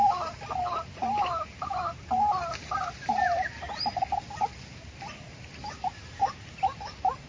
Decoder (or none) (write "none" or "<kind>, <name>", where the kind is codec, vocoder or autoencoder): none